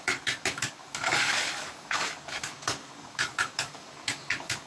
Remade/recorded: remade